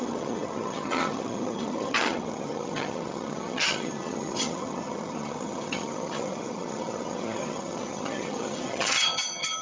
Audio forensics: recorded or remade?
remade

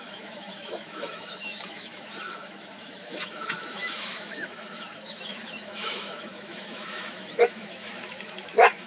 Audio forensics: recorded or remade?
remade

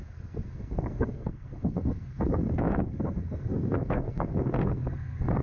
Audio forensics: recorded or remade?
remade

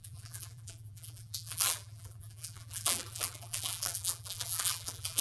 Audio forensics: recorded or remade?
remade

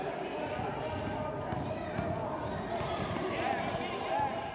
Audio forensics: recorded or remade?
recorded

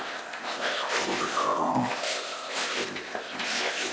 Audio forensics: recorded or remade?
remade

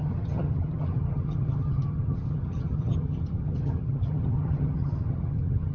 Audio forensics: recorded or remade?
remade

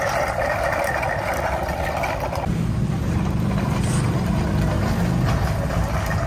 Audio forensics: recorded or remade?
recorded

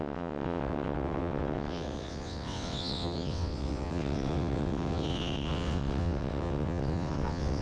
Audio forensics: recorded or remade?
remade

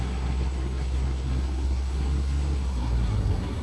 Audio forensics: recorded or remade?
remade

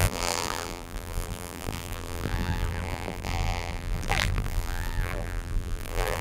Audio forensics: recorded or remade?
remade